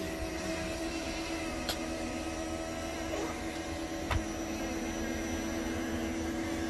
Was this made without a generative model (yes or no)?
yes